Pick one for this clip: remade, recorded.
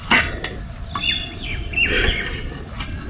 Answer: recorded